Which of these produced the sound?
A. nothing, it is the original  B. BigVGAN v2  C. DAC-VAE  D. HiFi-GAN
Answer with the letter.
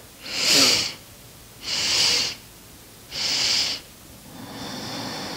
A